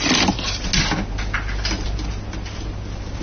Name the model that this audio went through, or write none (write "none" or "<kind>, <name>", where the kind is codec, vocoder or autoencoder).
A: none